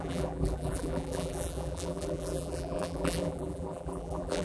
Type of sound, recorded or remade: remade